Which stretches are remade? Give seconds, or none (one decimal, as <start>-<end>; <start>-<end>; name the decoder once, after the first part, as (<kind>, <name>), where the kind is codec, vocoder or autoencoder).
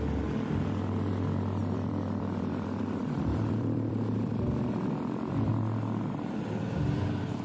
1.6-5.5 (vocoder, BigVGAN v2)